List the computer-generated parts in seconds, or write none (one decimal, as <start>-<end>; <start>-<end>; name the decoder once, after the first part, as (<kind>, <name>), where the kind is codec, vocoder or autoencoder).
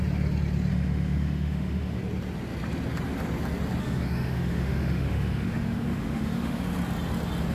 0.7-2.0 (autoencoder, DAC-VAE); 3.8-6.6